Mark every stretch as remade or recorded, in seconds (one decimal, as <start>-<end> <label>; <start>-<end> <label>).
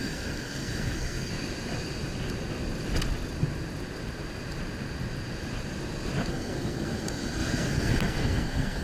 0.0-1.3 remade; 1.3-6.3 recorded; 6.3-8.8 remade